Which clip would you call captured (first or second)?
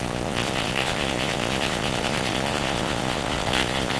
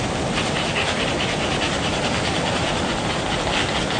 second